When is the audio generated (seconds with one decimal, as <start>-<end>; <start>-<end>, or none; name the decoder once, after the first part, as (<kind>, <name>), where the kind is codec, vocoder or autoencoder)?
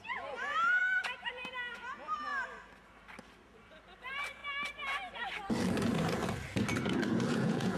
0.0-0.8 (vocoder, Vocos); 1.7-2.3; 4.0-4.4; 7.3-7.8